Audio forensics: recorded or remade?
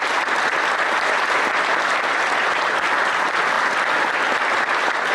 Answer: recorded